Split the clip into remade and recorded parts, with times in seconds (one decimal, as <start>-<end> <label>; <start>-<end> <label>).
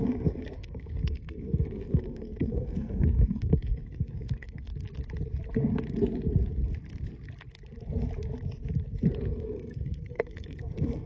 0.0-4.7 remade; 4.7-9.3 recorded; 9.3-11.1 remade